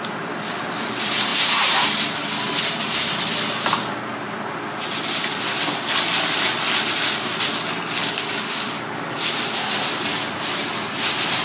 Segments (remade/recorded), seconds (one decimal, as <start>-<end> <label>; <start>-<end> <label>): 0.0-8.0 recorded; 8.0-9.3 remade; 9.3-11.4 recorded